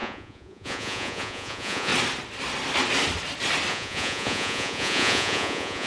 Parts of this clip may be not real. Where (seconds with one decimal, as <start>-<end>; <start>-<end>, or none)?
0.0-1.9; 3.7-5.9